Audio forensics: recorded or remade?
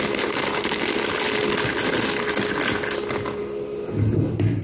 recorded